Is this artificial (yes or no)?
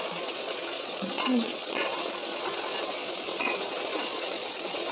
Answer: yes